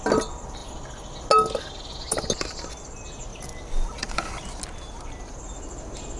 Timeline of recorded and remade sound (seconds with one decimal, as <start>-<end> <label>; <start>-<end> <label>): 0.0-3.3 recorded; 3.3-4.6 remade; 4.6-6.2 recorded